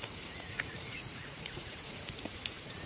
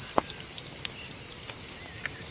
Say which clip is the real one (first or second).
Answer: second